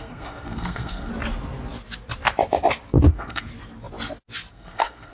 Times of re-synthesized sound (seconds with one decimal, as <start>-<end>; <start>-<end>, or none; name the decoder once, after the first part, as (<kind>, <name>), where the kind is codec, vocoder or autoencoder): 0.0-1.1 (codec, SNAC); 3.1-3.5; 4.5-5.1